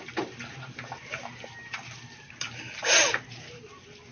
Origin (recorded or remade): recorded